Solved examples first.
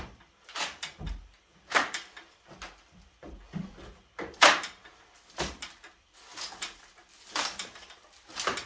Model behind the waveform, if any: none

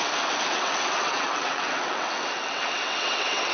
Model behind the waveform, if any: vocoder, WaveNeXt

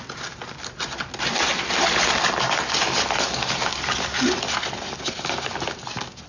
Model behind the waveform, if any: none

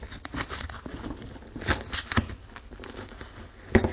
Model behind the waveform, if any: none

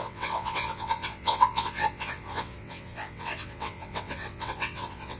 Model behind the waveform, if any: vocoder, WaveNeXt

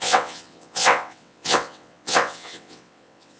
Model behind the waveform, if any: vocoder, WaveNeXt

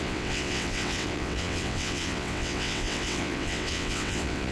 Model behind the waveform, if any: vocoder, WaveNeXt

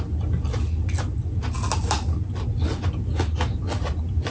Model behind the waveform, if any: none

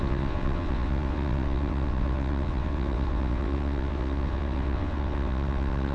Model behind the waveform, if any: vocoder, WaveNeXt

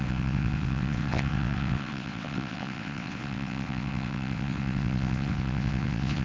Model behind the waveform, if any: vocoder, WaveNeXt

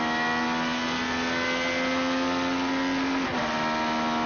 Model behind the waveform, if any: none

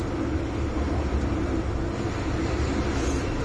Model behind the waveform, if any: none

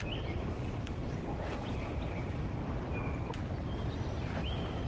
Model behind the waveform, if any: none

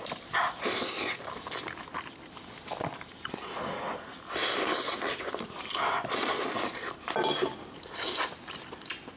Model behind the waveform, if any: none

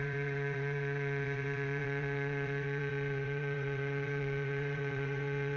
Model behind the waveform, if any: vocoder, WaveNeXt